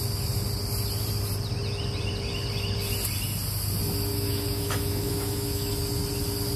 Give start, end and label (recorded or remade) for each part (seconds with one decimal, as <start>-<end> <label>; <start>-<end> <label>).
0.0-4.1 recorded; 4.1-5.7 remade; 5.7-6.6 recorded